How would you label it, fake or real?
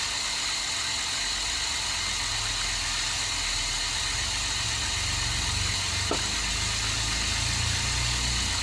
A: real